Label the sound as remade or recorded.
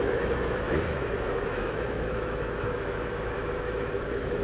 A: remade